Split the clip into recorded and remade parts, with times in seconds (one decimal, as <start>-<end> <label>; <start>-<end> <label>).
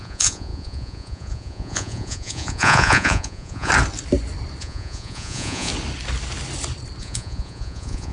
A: 0.0-3.7 remade; 3.7-4.6 recorded; 4.6-5.7 remade; 5.7-7.0 recorded; 7.0-8.1 remade